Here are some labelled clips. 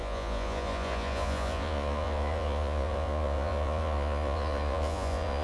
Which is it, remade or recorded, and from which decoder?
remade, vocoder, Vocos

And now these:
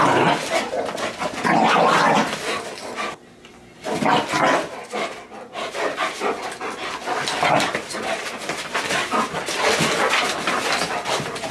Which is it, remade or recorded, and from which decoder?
recorded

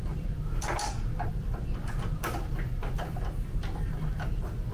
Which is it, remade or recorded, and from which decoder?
recorded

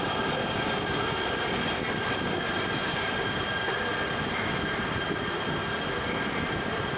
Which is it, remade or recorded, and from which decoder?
recorded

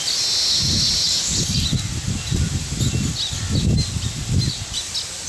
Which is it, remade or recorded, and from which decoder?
recorded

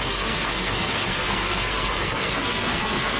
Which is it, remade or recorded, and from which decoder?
remade, codec, SNAC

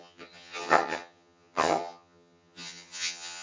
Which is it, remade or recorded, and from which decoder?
remade, vocoder, HiFi-GAN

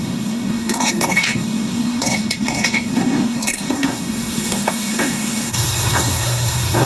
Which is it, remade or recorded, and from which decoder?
remade, codec, SNAC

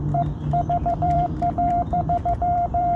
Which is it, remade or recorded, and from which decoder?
remade, vocoder, BigVGAN v2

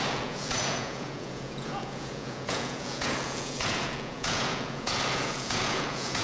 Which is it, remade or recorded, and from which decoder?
remade, vocoder, Vocos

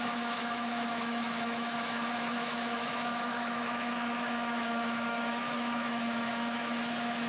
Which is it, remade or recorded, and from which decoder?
remade, autoencoder, DAC-VAE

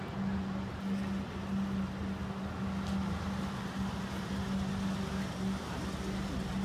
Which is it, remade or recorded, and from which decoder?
recorded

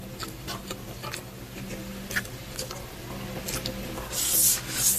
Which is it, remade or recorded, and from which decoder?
recorded